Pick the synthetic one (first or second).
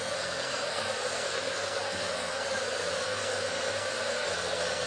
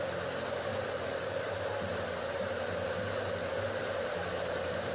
first